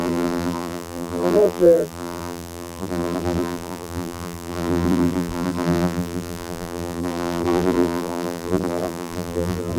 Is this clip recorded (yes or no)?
no